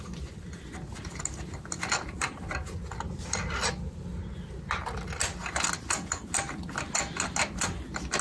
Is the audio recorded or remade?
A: recorded